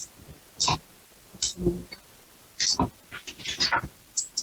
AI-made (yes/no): no